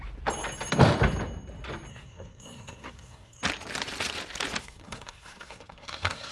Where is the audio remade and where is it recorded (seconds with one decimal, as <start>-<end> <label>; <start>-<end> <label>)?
0.0-1.9 recorded; 1.9-3.4 remade; 3.4-4.6 recorded; 4.6-6.3 remade